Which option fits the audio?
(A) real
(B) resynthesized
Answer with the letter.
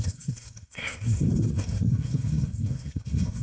B